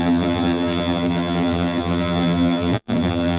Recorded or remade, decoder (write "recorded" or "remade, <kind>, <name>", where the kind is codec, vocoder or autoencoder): remade, vocoder, BigVGAN v2